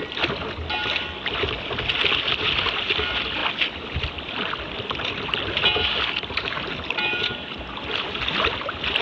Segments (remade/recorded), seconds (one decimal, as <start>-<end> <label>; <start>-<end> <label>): 0.0-9.0 recorded

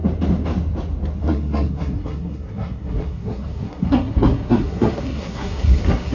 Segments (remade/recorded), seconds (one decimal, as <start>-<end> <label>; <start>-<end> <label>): 0.0-1.2 recorded; 1.2-6.1 remade

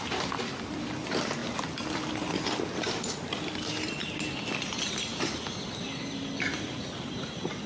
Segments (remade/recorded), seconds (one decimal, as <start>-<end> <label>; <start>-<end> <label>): 0.0-7.7 recorded

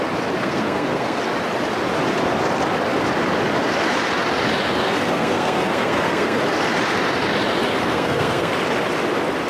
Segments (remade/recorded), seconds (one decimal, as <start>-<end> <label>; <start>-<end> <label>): 0.0-0.4 recorded; 0.4-1.2 remade; 1.2-4.8 recorded; 4.8-6.4 remade; 6.4-7.8 recorded; 7.8-8.5 remade; 8.5-9.5 recorded

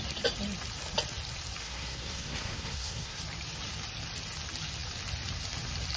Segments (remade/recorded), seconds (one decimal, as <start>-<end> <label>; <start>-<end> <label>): 0.0-1.6 recorded; 1.6-3.2 remade; 3.2-6.0 recorded